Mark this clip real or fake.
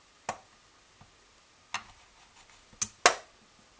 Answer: real